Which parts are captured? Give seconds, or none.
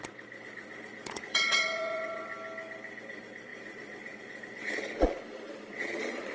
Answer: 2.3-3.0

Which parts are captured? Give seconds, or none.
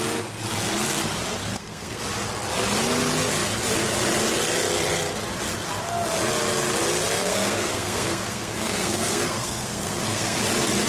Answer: 0.0-1.5; 2.0-7.2; 10.4-10.9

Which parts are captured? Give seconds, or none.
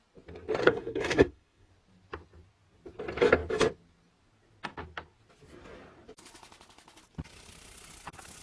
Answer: 0.0-0.6; 1.7-8.4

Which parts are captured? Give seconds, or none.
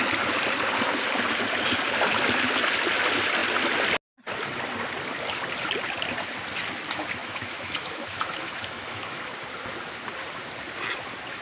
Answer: 0.0-7.2; 9.2-11.4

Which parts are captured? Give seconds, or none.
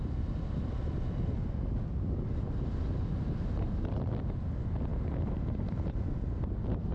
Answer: 0.0-6.9